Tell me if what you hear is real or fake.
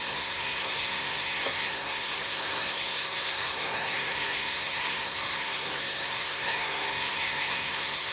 fake